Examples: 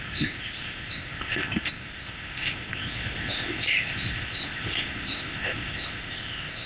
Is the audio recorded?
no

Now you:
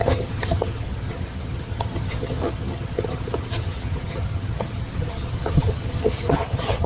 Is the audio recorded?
no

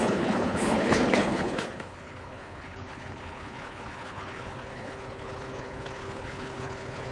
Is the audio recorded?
no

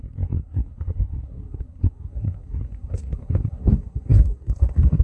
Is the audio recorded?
no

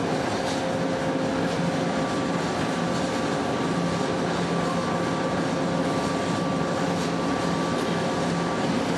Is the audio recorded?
yes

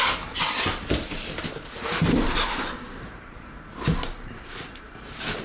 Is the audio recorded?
no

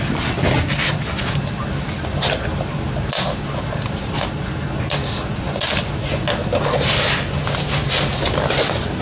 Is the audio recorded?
yes